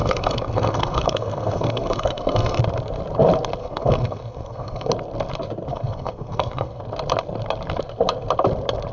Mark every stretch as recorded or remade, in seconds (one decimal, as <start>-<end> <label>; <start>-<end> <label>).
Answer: 0.0-2.6 remade; 2.6-3.6 recorded; 3.6-4.9 remade; 4.9-5.7 recorded; 5.7-6.8 remade; 6.8-8.9 recorded